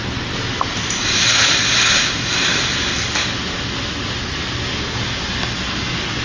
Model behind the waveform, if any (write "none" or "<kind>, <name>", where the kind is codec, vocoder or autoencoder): none